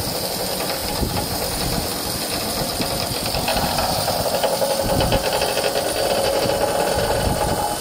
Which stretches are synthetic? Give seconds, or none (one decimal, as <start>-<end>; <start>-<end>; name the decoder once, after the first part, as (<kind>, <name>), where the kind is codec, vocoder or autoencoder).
0.8-1.4 (vocoder, BigVGAN v2)